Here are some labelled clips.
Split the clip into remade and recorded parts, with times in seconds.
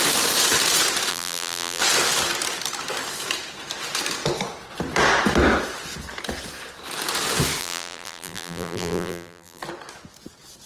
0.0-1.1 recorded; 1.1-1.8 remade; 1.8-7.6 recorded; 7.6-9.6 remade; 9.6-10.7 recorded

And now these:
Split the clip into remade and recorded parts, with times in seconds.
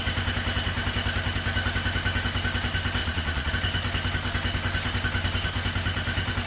0.0-3.0 recorded; 3.0-3.5 remade; 3.5-6.5 recorded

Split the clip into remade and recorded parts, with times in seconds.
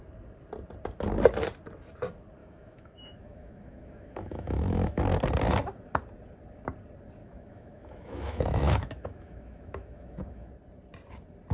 0.0-2.4 recorded; 2.4-5.0 remade; 5.0-7.2 recorded; 7.2-10.5 remade; 10.5-11.5 recorded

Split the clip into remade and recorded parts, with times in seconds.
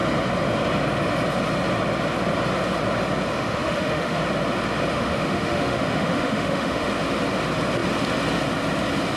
0.0-3.3 recorded; 3.3-4.2 remade; 4.2-4.9 recorded; 4.9-6.9 remade; 6.9-9.2 recorded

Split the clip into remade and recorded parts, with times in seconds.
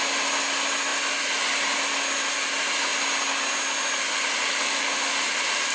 0.0-5.7 recorded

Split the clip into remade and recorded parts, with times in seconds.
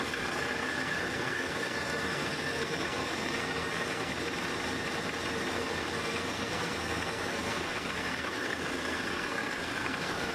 0.0-4.1 remade; 4.1-5.5 recorded; 5.5-10.3 remade